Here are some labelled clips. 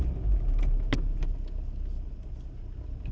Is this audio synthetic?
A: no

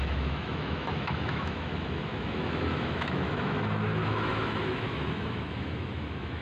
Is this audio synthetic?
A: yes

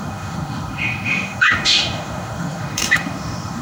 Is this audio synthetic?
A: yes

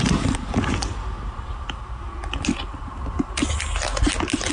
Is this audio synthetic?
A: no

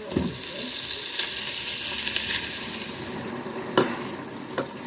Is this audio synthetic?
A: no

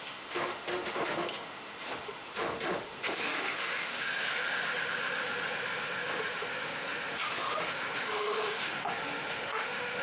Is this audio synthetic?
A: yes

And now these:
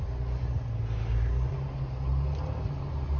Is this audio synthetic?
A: no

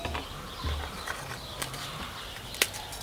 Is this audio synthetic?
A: no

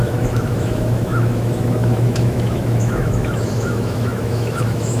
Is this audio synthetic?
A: yes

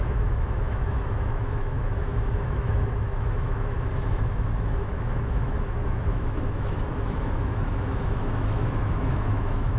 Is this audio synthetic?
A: yes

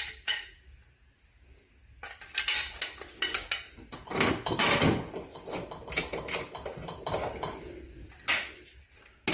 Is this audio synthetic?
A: no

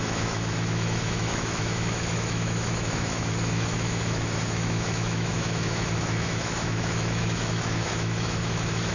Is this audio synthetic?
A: yes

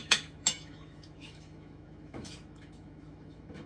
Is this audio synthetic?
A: yes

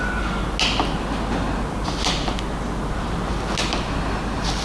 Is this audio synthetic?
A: no